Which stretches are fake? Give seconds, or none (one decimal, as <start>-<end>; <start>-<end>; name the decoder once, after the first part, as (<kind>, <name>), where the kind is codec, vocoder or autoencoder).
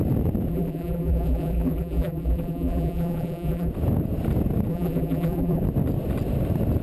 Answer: 0.5-3.7 (vocoder, BigVGAN v2); 4.7-5.6